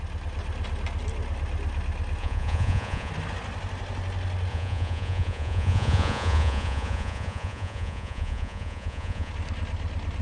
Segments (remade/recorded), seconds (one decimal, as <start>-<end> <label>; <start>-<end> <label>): 0.0-2.2 recorded; 2.2-3.1 remade; 3.1-4.5 recorded; 4.5-9.3 remade; 9.3-10.2 recorded